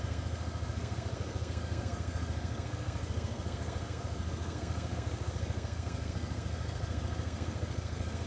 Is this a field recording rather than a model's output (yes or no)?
no